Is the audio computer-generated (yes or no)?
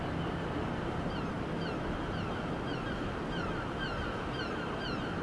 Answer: no